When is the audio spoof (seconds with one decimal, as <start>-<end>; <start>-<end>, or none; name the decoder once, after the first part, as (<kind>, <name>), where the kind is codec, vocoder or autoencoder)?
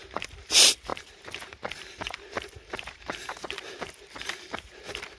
0.0-5.2 (vocoder, BigVGAN v2)